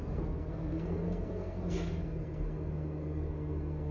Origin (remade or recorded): remade